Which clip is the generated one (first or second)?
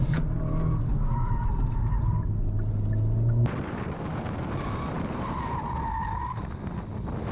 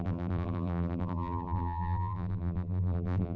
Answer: second